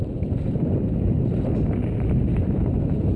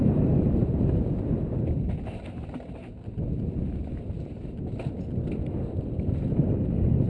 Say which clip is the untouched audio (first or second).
second